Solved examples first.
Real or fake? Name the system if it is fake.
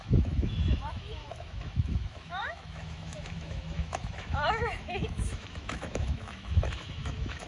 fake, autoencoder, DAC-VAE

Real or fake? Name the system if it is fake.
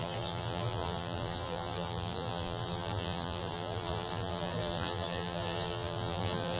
fake, vocoder, BigVGAN v2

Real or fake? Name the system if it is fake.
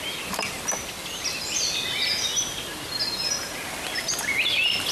real